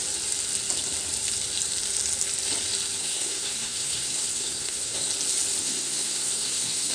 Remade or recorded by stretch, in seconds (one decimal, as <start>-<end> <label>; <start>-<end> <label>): 0.0-3.0 recorded; 3.0-5.1 remade; 5.1-5.6 recorded; 5.6-6.9 remade